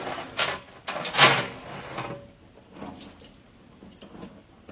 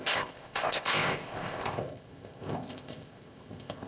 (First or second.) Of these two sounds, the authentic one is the first